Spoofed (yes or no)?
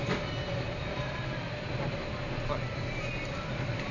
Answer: no